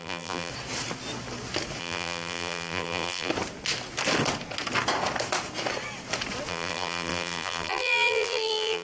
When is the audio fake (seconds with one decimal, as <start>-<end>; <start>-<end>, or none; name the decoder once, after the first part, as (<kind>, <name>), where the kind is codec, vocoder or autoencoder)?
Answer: 0.0-0.5 (vocoder, BigVGAN v2); 1.8-3.3; 6.5-8.8